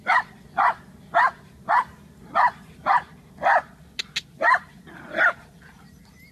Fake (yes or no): no